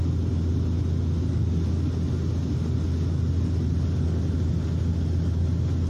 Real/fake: real